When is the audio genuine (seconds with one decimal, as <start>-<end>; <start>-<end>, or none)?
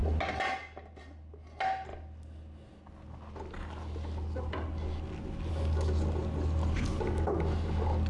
0.0-8.1